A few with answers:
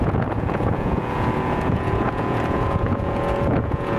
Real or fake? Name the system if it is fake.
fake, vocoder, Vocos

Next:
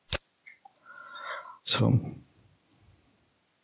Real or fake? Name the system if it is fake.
real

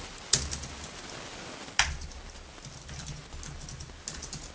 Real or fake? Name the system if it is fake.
real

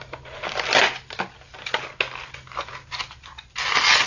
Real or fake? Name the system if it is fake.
real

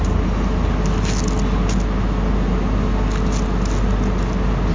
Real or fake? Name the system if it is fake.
real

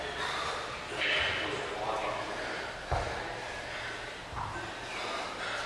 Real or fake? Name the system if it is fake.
real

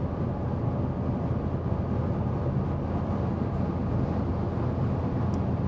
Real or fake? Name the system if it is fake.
real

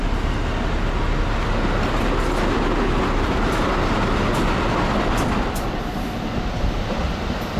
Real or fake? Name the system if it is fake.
real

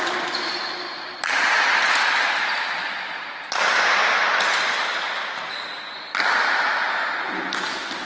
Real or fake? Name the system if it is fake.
real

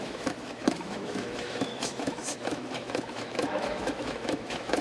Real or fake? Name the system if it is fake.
fake, autoencoder, DAC-VAE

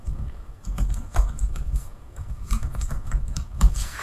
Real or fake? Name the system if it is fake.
fake, codec, SNAC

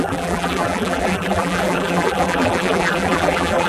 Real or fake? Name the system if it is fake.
fake, vocoder, BigVGAN v2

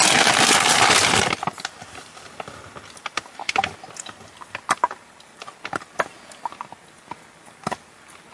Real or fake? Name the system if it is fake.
real